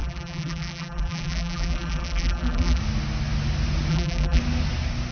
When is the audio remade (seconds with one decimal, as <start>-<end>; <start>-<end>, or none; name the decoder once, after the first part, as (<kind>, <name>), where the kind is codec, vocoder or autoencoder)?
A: 0.0-2.8 (vocoder, BigVGAN v2); 3.9-4.4